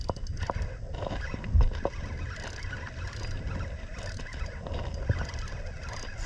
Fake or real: real